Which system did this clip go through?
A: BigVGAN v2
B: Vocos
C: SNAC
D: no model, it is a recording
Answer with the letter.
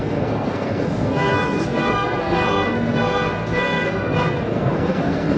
C